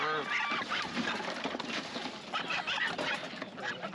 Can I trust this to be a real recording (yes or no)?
yes